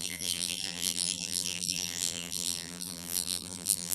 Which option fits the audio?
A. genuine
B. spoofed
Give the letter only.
B